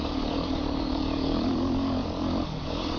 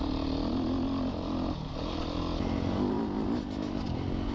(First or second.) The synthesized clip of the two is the first